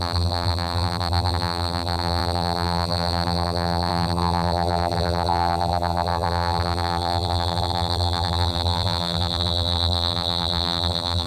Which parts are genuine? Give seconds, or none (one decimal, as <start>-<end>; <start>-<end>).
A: none